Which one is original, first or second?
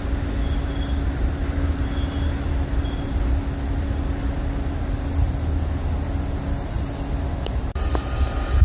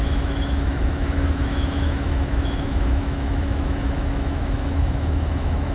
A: first